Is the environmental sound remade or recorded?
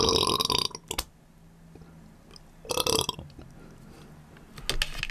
recorded